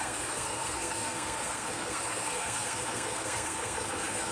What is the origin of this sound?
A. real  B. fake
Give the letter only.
B